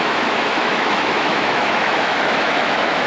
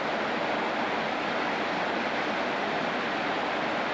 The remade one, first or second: first